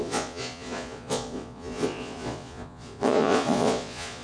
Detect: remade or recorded remade